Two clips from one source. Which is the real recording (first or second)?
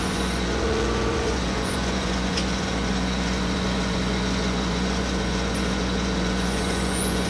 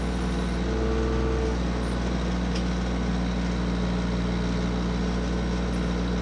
second